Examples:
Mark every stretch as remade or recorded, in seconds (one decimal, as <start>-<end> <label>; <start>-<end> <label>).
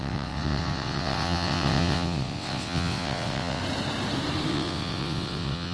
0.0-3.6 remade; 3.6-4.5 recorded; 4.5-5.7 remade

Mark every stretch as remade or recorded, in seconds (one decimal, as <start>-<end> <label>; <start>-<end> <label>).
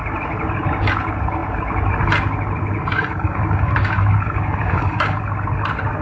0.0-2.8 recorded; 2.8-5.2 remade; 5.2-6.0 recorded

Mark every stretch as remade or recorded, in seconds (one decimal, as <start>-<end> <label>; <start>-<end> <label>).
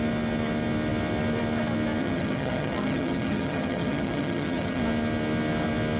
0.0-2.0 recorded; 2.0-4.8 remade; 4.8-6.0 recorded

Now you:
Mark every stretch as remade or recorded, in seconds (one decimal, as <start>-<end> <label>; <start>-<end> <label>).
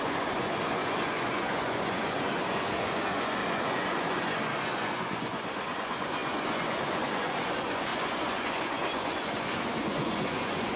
0.0-10.8 remade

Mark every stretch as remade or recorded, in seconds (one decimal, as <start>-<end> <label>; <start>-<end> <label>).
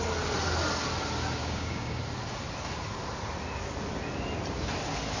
0.0-1.4 recorded; 1.4-2.0 remade; 2.0-5.2 recorded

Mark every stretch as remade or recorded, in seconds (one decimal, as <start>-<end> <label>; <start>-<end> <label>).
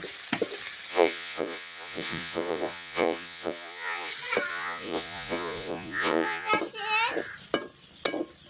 0.0-0.9 recorded; 0.9-4.1 remade; 4.1-4.5 recorded; 4.5-6.5 remade; 6.5-8.5 recorded